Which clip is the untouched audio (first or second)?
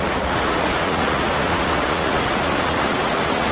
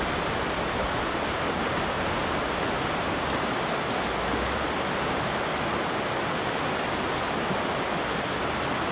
second